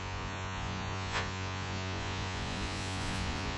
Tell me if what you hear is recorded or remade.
remade